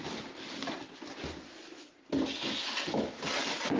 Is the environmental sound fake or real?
real